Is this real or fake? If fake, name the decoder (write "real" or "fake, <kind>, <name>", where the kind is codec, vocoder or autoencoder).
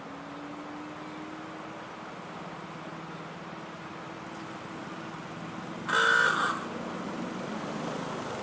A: real